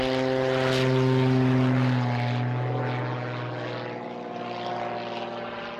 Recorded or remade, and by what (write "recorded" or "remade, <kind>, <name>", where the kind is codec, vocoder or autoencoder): recorded